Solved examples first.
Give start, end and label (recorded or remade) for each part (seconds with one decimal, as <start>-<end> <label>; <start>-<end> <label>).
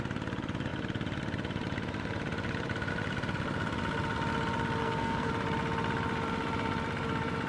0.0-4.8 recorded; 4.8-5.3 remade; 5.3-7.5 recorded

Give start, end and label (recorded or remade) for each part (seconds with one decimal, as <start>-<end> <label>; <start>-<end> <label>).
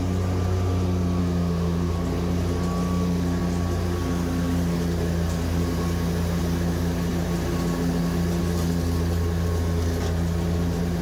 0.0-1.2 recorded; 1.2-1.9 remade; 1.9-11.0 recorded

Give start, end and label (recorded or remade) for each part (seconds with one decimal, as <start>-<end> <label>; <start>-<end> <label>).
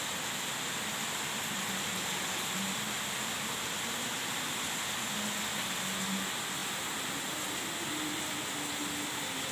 0.0-9.5 recorded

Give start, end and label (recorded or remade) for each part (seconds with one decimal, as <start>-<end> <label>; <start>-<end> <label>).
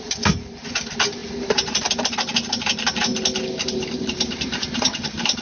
0.0-3.1 remade; 3.1-3.9 recorded; 3.9-5.4 remade